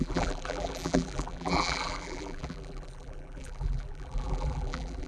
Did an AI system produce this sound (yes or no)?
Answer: yes